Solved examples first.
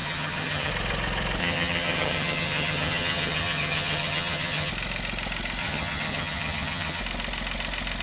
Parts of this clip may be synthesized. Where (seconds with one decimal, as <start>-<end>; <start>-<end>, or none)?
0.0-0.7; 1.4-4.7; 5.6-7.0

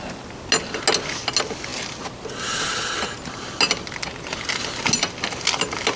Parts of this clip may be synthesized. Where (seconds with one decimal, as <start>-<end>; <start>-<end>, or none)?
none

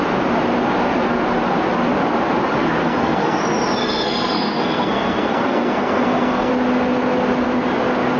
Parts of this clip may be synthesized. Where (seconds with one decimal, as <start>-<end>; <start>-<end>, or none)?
2.8-3.4; 3.8-6.5